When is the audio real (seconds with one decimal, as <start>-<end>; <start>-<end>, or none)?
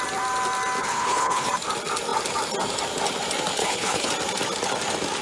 0.0-0.8; 1.5-3.6; 4.1-5.2